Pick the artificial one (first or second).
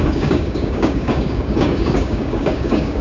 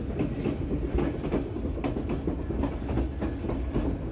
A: first